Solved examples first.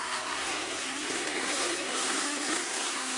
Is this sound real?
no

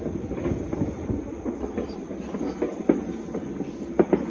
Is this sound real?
yes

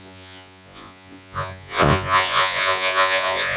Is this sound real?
no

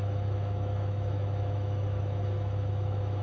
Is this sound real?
no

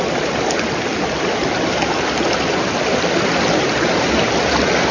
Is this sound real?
yes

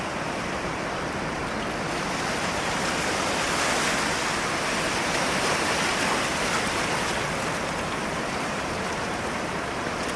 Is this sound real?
yes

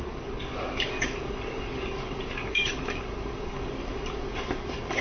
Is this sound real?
no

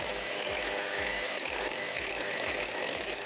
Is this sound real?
no